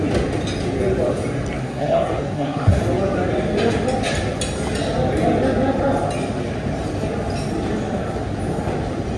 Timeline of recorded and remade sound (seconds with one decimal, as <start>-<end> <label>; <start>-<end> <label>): 0.0-1.6 recorded; 1.6-2.8 remade; 2.8-9.2 recorded